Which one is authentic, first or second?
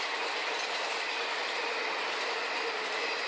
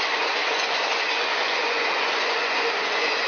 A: first